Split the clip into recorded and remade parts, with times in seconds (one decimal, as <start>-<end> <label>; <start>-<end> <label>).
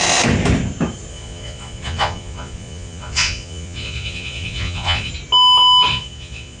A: 0.0-1.1 recorded; 1.1-5.1 remade; 5.1-5.9 recorded; 5.9-6.6 remade